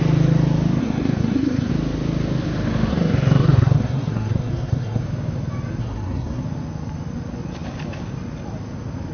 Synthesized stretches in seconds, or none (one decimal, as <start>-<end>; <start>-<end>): 0.8-1.7; 2.9-5.0; 5.8-6.4